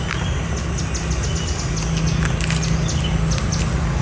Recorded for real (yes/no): yes